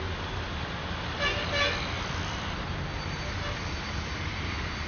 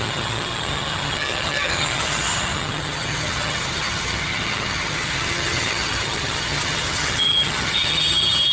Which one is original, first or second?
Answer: first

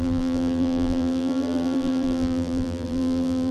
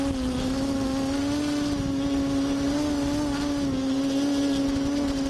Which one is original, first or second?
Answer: second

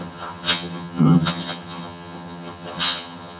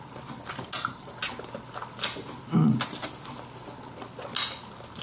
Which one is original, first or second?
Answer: second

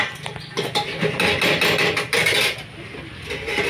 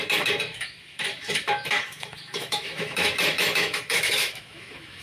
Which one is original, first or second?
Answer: first